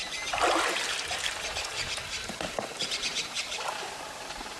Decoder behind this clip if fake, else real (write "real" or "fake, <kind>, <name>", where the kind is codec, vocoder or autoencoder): fake, vocoder, BigVGAN v2